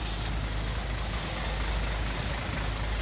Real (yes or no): yes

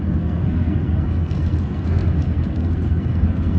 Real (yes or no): no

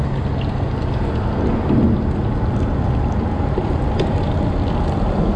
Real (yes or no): yes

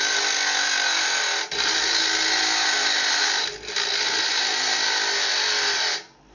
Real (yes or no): yes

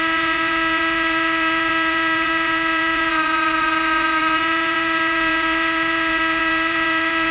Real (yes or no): no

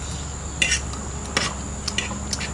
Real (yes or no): yes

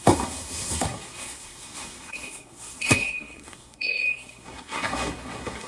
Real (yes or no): no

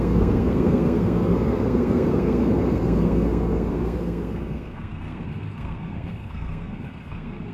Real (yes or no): no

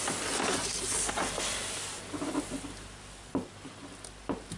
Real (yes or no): yes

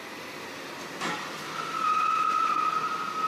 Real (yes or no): yes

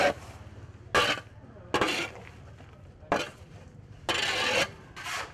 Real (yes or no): yes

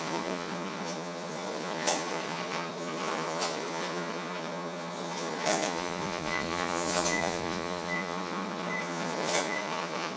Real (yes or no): no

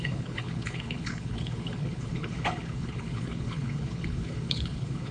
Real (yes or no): no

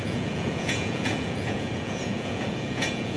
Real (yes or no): no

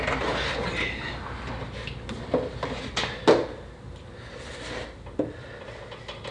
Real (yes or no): yes